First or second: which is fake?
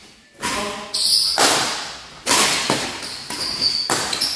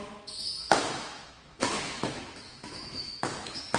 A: second